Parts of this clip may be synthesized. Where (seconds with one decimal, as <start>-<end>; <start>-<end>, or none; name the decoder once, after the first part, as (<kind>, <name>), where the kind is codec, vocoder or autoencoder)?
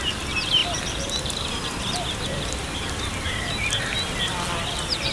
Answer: 0.6-3.7 (vocoder, BigVGAN v2)